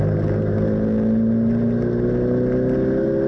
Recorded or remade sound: recorded